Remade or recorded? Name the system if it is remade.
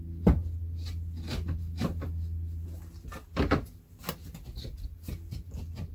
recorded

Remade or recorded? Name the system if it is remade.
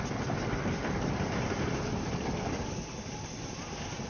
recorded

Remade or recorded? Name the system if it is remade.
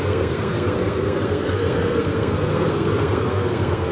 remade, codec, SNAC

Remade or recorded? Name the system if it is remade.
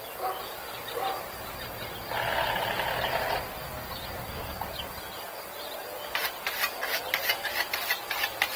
recorded